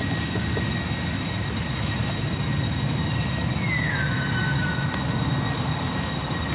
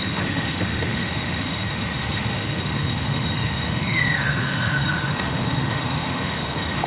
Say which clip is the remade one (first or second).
second